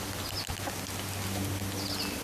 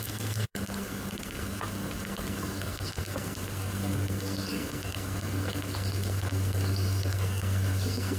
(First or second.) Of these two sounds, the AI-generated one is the second